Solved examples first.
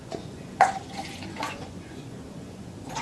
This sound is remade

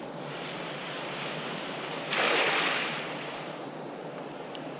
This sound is recorded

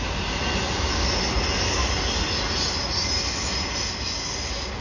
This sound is recorded